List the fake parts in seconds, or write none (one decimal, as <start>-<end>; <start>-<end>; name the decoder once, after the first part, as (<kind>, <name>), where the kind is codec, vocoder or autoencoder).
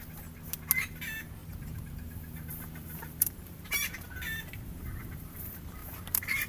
1.4-3.9 (vocoder, BigVGAN v2); 4.7-5.3; 5.8-6.5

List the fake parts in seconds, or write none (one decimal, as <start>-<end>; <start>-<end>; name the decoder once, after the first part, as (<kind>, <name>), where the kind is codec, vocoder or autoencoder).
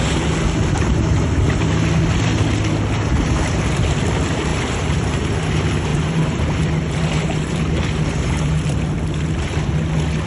4.5-5.3 (vocoder, BigVGAN v2); 5.9-9.0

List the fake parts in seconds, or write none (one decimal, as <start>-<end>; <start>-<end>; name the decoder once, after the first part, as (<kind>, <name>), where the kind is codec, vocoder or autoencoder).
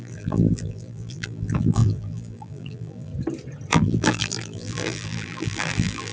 0.0-3.1 (vocoder, BigVGAN v2); 3.7-6.1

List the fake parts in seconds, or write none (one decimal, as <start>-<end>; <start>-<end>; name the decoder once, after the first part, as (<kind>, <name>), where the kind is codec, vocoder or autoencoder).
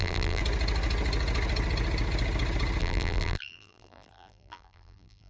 0.0-0.4 (vocoder, BigVGAN v2); 2.8-5.3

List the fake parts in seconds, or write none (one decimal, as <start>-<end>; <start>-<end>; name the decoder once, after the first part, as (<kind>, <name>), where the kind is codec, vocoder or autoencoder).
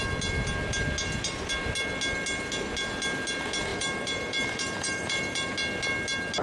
3.7-5.5 (vocoder, BigVGAN v2)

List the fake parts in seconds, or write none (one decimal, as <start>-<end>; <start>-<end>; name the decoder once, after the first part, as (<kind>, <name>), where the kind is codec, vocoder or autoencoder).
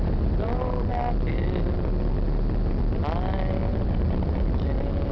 0.0-0.9 (vocoder, BigVGAN v2); 3.7-5.1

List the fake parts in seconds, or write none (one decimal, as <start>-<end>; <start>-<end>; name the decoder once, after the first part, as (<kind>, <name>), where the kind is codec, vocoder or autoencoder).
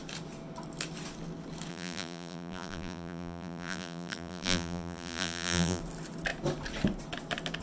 1.7-5.8 (vocoder, BigVGAN v2)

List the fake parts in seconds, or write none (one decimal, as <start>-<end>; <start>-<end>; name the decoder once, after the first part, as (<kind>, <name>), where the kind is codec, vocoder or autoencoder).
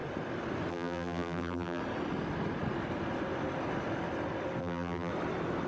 0.7-1.8 (vocoder, BigVGAN v2); 4.6-5.1